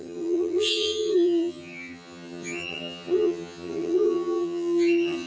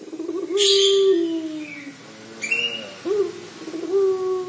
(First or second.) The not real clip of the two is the first